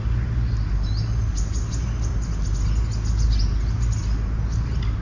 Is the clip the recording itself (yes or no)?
yes